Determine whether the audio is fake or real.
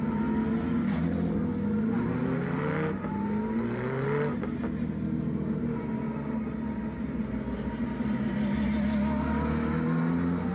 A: real